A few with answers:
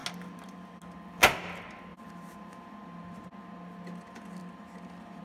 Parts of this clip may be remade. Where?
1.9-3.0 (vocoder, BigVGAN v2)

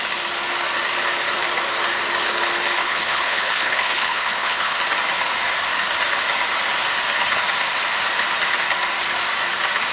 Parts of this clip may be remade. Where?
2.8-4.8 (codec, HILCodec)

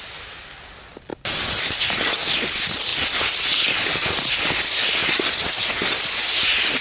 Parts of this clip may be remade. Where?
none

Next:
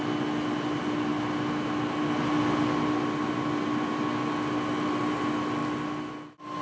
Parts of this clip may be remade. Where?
none

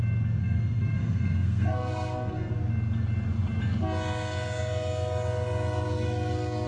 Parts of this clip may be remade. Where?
0.4-2.5 (codec, SNAC)

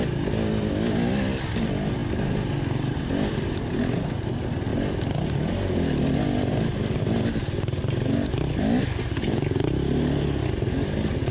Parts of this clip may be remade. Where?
none